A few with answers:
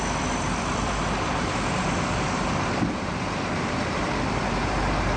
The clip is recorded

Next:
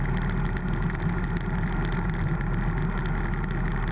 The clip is recorded